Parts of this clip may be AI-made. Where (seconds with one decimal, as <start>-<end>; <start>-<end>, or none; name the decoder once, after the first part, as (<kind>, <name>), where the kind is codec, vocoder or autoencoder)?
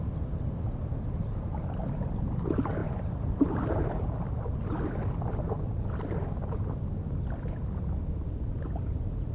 2.8-4.1 (vocoder, BigVGAN v2)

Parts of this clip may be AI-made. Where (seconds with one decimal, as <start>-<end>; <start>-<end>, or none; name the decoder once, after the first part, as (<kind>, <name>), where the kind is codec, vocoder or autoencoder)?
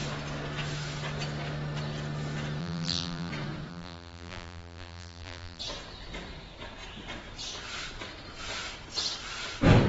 2.6-3.3 (vocoder, BigVGAN v2); 3.7-5.6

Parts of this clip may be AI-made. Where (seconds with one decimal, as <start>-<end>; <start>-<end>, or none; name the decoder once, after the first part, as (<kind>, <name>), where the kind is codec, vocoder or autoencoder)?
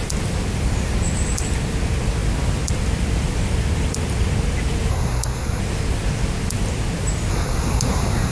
4.9-5.6 (codec, SNAC); 7.3-8.3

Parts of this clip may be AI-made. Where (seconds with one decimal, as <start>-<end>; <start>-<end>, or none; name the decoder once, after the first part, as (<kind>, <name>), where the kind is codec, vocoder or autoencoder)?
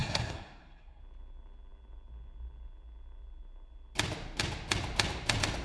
0.0-1.0 (codec, SNAC)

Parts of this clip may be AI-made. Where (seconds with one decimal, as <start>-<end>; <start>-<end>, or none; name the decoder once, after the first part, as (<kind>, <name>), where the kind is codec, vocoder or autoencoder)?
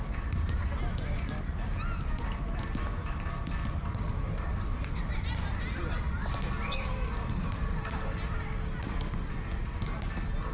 none